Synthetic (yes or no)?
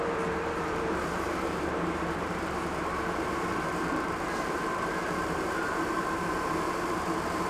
yes